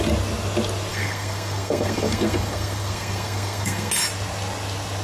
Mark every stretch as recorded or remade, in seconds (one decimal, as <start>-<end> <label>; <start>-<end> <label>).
0.0-0.9 recorded; 0.9-3.9 remade; 3.9-5.0 recorded